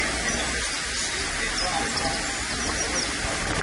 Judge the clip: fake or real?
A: real